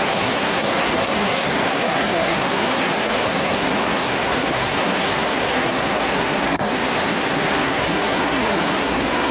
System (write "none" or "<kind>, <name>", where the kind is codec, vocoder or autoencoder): codec, SNAC